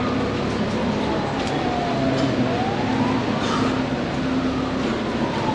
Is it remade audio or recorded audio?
recorded